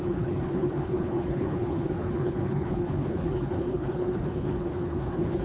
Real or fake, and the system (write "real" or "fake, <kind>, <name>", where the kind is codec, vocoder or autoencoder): fake, codec, HILCodec